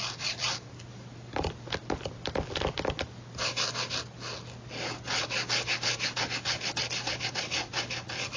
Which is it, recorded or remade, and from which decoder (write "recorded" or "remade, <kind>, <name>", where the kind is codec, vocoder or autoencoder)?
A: recorded